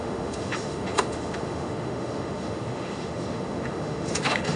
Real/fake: fake